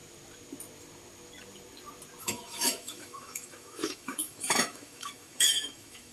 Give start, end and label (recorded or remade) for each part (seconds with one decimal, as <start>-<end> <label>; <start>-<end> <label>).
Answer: 0.0-2.2 recorded; 2.2-6.1 remade